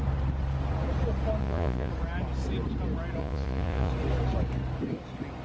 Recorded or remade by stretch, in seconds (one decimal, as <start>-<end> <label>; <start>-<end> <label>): 0.0-1.4 recorded; 1.4-1.9 remade; 1.9-3.2 recorded; 3.2-3.9 remade; 3.9-5.4 recorded